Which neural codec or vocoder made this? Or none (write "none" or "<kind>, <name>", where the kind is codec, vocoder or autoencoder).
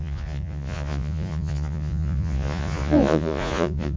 vocoder, Vocos